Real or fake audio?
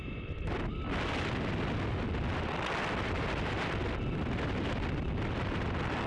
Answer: real